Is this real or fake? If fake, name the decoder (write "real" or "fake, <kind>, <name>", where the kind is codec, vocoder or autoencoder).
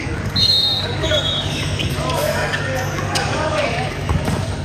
fake, codec, DAC